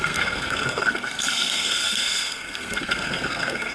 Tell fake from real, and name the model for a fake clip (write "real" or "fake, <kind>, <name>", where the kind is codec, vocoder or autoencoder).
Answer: fake, codec, SNAC